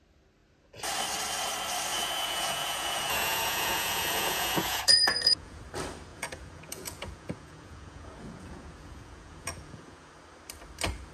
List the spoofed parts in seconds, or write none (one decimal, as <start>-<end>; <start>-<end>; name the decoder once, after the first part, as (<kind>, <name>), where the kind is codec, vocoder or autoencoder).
1.9-5.6 (vocoder, Vocos); 6.1-10.1